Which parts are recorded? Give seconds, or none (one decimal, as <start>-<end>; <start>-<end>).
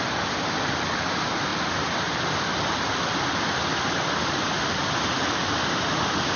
0.0-6.4